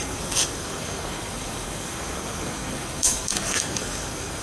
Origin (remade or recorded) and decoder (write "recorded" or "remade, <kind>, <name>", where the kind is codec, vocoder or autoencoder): remade, codec, SNAC